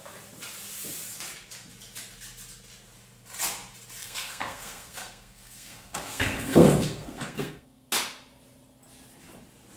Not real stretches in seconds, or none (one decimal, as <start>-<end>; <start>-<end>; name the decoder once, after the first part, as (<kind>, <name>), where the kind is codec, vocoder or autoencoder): 4.0-7.9 (codec, SNAC)

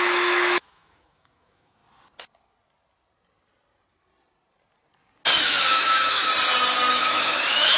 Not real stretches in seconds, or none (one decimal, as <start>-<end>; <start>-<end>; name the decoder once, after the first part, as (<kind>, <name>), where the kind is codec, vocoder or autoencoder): 0.0-1.8 (autoencoder, DAC-VAE); 5.4-6.3; 6.9-7.8